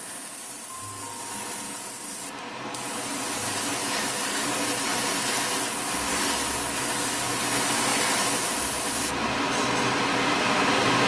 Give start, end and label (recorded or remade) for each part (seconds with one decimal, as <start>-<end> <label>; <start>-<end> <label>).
0.0-11.1 recorded